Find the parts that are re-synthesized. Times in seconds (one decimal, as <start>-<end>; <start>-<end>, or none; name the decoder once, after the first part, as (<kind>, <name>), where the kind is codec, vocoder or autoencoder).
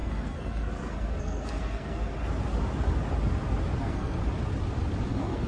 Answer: 0.0-2.1 (codec, SNAC); 3.8-4.2; 5.1-5.5